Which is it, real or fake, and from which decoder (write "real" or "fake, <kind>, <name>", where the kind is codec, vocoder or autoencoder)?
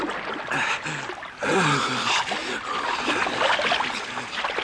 real